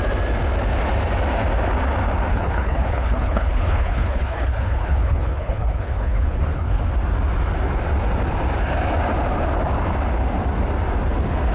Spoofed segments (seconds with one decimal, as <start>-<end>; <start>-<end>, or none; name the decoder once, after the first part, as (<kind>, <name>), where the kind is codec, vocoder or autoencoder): 2.3-6.8 (codec, HILCodec)